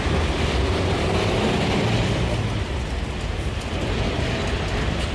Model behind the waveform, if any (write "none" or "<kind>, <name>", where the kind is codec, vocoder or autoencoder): none